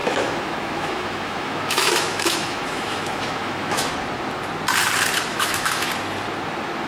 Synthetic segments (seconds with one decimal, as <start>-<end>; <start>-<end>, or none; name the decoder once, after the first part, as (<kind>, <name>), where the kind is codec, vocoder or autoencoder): 0.0-3.9 (autoencoder, DAC-VAE); 5.3-5.9